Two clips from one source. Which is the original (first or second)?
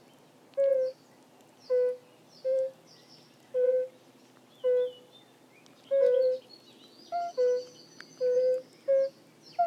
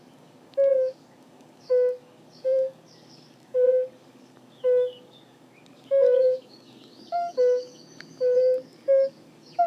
first